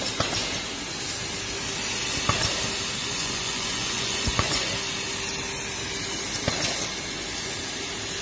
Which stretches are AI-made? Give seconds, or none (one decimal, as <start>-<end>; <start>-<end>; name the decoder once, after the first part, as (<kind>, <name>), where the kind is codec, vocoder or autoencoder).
3.0-4.7 (vocoder, Vocos)